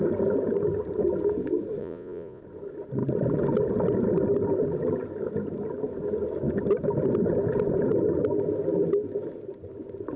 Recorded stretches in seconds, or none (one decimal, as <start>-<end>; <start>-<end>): 0.0-1.8; 2.4-10.2